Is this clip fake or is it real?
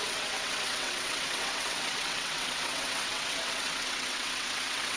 fake